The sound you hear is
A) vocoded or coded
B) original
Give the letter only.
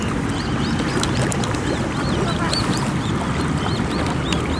B